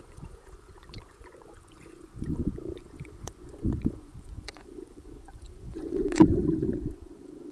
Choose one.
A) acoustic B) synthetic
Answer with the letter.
B